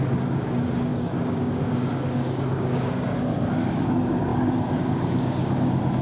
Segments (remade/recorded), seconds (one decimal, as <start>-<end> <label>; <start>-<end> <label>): 0.0-6.0 remade